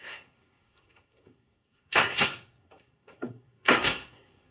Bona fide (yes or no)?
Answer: no